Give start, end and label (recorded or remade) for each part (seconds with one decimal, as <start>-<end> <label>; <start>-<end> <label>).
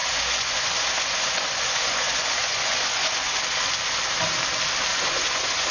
0.0-3.4 remade; 3.4-4.9 recorded; 4.9-5.7 remade